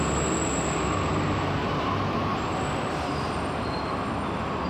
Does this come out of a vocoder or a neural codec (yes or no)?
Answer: no